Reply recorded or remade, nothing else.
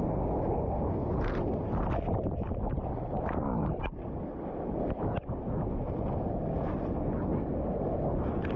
recorded